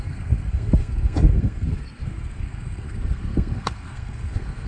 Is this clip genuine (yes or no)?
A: no